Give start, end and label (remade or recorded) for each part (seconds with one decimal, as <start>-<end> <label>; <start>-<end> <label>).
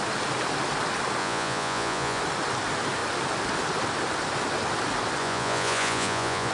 0.0-1.2 recorded; 1.2-2.2 remade; 2.2-5.2 recorded; 5.2-6.5 remade